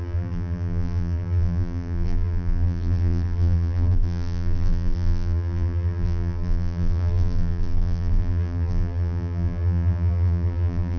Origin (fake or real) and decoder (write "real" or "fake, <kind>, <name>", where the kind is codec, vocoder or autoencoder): fake, vocoder, BigVGAN v2